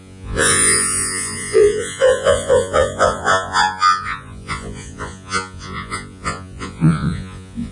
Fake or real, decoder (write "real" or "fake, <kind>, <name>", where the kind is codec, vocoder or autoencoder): fake, vocoder, Vocos